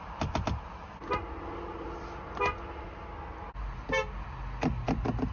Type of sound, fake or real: real